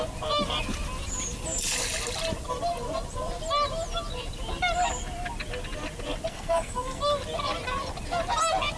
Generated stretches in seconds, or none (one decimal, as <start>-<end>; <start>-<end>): 6.3-7.0